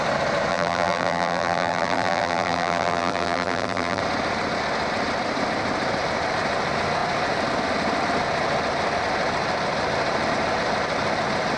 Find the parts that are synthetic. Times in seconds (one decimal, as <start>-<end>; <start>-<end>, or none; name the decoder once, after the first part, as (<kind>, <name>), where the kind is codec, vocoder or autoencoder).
0.5-4.0 (vocoder, BigVGAN v2)

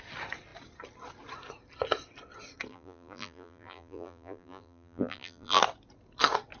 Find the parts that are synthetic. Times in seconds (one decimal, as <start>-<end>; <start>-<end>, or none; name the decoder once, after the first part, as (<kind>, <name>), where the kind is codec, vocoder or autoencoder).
2.7-5.6 (vocoder, BigVGAN v2)

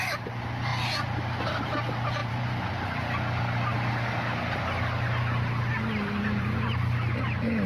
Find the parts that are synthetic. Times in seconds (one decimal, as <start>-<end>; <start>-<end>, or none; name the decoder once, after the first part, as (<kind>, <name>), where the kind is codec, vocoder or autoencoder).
2.2-3.1 (vocoder, BigVGAN v2)